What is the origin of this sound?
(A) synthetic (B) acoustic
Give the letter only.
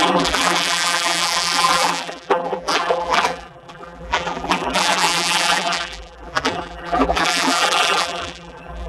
A